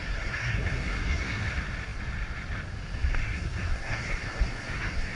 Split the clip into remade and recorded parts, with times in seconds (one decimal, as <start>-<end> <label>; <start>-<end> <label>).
0.0-1.4 remade; 1.4-3.2 recorded; 3.2-5.2 remade